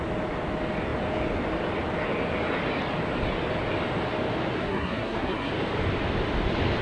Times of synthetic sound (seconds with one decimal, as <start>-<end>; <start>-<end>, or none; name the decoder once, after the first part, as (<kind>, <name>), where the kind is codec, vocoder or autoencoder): 4.6-5.5 (codec, SNAC)